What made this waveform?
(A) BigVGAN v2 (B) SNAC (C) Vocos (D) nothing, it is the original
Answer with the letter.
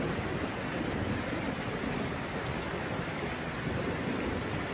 D